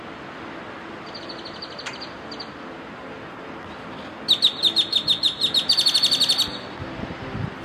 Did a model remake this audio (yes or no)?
no